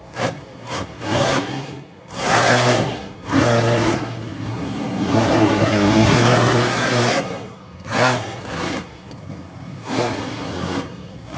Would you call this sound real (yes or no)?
no